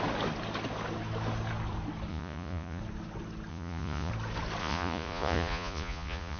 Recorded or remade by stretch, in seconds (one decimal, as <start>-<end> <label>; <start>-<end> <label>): 0.0-2.1 recorded; 2.1-2.8 remade; 2.8-3.5 recorded; 3.5-4.1 remade; 4.1-4.6 recorded; 4.6-6.4 remade